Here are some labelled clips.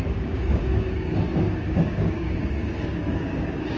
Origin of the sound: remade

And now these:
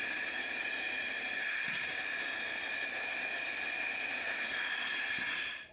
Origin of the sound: recorded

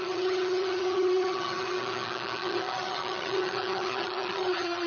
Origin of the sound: remade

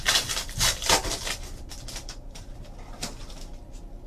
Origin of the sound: recorded